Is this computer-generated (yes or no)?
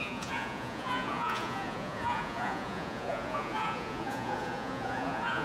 yes